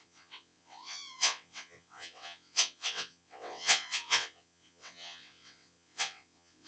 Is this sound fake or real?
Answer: fake